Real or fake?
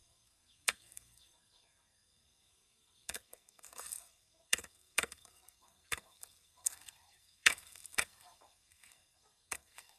fake